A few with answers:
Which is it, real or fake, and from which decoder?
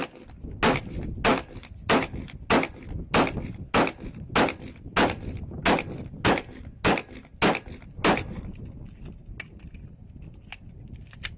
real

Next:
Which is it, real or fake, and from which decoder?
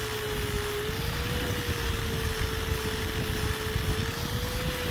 real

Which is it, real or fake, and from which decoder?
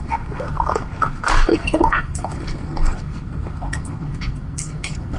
fake, codec, SNAC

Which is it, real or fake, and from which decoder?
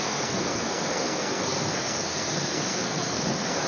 fake, codec, SNAC